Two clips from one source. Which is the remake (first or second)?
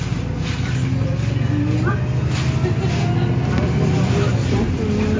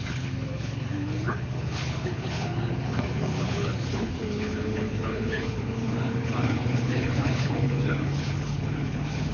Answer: second